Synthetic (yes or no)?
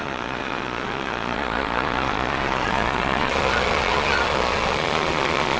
yes